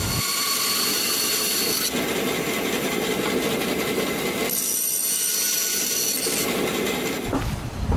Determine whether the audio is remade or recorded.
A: recorded